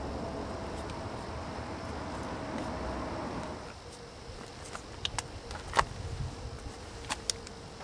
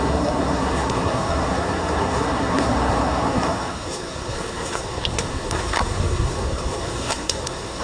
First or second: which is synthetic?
second